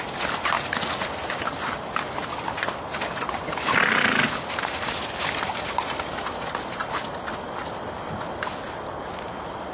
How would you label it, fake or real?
real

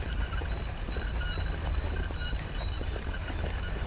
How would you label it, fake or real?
real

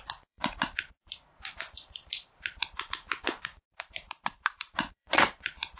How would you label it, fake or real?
fake